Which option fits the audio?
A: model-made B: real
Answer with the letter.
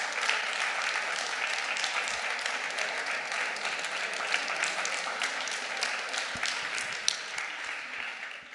B